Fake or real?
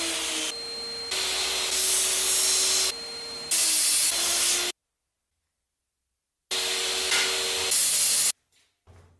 real